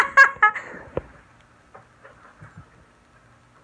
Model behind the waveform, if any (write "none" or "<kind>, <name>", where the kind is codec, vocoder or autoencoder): none